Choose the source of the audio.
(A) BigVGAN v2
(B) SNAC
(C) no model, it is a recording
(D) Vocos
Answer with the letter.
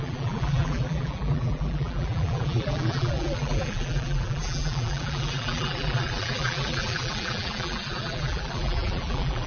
A